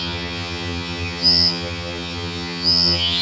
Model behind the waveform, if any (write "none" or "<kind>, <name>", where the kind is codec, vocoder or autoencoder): vocoder, HiFi-GAN